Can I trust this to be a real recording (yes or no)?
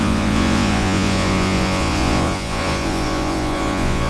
no